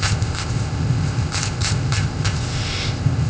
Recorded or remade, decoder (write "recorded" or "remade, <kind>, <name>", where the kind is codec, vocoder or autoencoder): remade, codec, ZipCodec